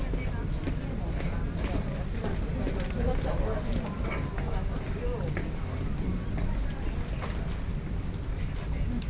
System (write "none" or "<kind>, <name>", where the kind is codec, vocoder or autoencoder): none